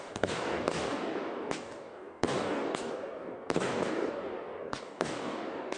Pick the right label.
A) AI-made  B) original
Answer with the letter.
A